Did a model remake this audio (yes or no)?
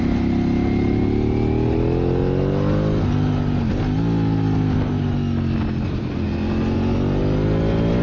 no